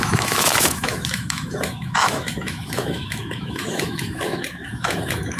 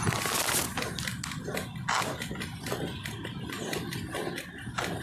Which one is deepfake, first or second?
first